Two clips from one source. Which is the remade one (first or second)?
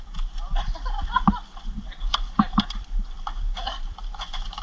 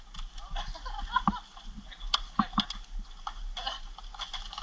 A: first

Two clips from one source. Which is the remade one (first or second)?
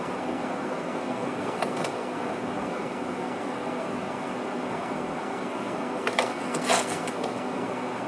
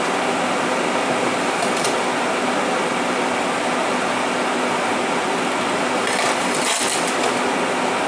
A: first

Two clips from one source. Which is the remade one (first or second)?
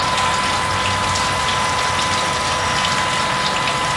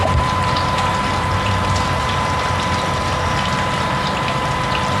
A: second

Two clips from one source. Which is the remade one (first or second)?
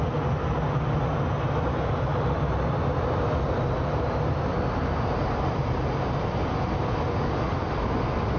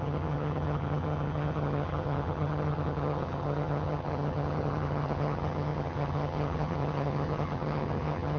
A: second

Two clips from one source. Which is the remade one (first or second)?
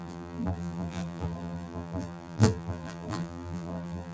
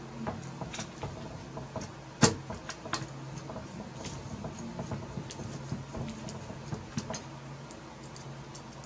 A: first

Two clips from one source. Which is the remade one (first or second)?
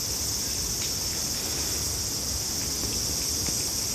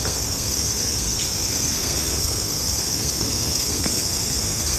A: second